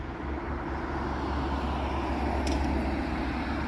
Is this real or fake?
real